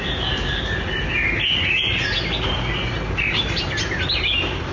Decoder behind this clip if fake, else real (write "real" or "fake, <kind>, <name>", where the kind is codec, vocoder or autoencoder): real